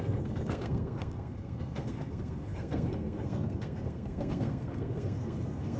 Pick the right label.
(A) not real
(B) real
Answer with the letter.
A